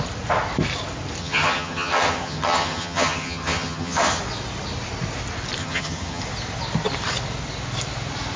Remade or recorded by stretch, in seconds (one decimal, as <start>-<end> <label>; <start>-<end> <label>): 0.0-1.2 recorded; 1.2-4.2 remade; 4.2-5.6 recorded; 5.6-6.2 remade; 6.2-8.4 recorded